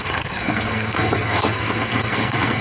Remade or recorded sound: remade